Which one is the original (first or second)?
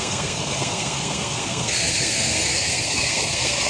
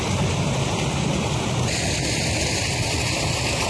second